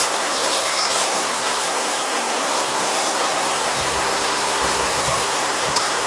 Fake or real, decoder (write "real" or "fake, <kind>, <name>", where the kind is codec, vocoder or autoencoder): fake, codec, SNAC